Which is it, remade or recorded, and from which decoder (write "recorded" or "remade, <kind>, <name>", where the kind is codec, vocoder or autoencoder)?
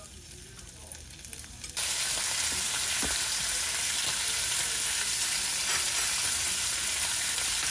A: recorded